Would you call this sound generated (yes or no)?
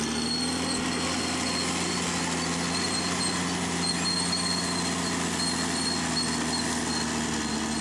no